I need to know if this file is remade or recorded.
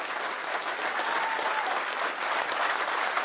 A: recorded